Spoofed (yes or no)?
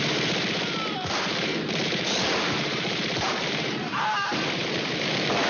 yes